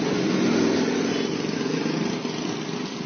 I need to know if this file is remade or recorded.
recorded